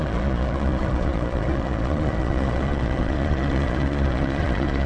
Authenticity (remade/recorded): remade